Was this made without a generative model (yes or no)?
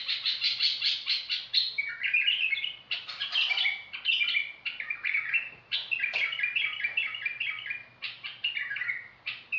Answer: yes